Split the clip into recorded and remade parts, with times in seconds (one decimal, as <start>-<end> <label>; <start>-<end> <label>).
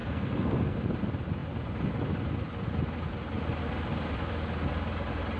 0.0-0.8 remade; 0.8-5.4 recorded